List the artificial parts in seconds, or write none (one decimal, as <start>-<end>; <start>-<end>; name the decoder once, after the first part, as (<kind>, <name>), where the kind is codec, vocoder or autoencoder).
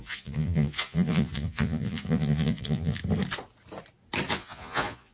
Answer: 0.0-3.0 (vocoder, Vocos); 4.3-5.1